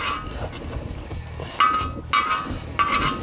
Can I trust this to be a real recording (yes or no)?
yes